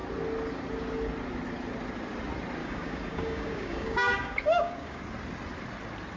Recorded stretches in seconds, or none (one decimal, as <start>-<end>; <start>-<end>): 0.0-2.6; 5.0-6.2

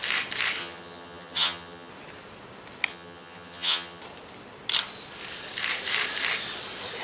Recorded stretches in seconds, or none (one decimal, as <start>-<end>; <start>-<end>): 0.0-0.6; 1.9-2.9; 4.0-7.0

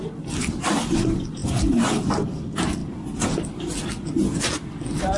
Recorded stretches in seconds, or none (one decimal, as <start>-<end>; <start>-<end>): 0.0-1.4; 2.1-5.2

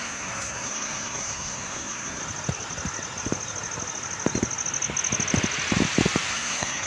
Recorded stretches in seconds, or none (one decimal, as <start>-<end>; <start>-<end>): 2.2-6.3

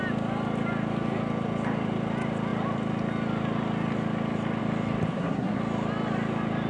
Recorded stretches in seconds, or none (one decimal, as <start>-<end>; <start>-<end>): 0.0-5.1; 5.6-6.7

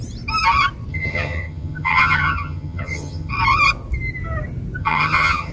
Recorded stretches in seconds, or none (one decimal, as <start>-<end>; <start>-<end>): 0.0-0.9; 3.3-4.8

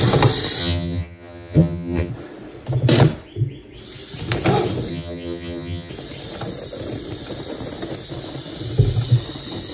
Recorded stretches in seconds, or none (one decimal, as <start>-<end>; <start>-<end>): 0.0-0.6; 2.1-4.9; 5.9-9.7

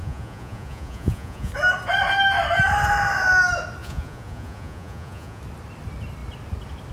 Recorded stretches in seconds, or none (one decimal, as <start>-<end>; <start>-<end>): 1.5-3.8; 5.4-6.9